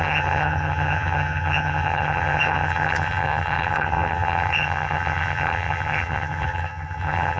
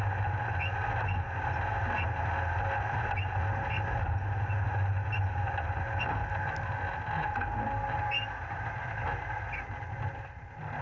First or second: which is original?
second